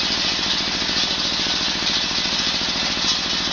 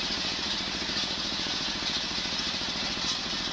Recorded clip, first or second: first